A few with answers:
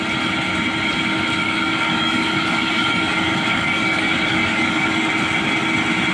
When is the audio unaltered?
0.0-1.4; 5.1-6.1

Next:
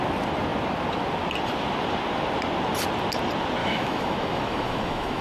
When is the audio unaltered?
0.0-3.6

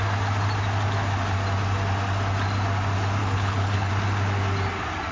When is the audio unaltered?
0.0-3.2; 3.9-5.1

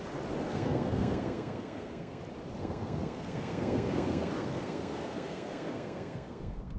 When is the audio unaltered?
0.0-0.5; 2.2-2.6

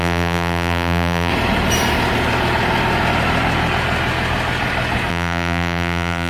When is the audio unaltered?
1.3-5.1

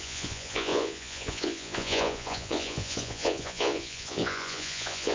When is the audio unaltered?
none

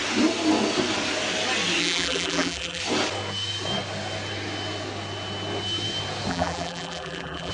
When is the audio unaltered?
0.0-1.8; 2.8-6.3